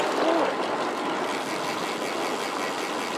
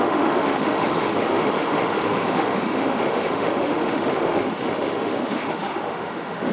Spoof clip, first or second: second